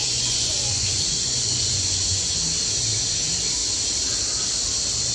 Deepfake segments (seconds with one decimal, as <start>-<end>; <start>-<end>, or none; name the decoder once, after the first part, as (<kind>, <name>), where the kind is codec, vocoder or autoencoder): 0.0-2.4 (vocoder, Vocos)